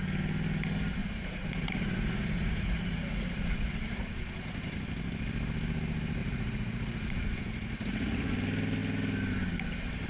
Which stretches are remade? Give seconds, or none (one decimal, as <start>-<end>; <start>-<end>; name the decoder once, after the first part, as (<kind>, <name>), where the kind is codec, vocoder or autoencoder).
1.0-4.8 (vocoder, Vocos); 6.2-8.3